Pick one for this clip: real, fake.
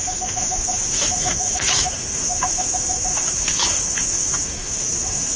fake